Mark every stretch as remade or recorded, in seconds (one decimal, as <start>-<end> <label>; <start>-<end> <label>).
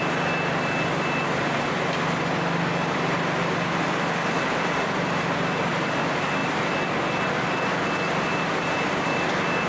0.0-9.7 recorded